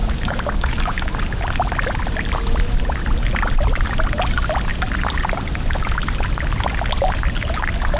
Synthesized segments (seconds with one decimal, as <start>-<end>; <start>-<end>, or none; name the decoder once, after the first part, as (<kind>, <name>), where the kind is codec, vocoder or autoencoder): 0.0-1.1 (codec, DAC)